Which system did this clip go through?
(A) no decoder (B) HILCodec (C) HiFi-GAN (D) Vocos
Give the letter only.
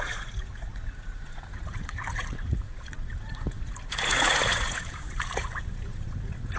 D